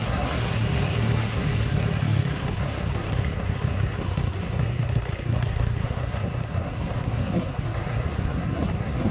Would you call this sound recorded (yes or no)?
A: no